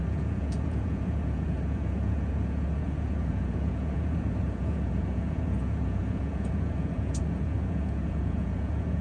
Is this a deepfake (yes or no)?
yes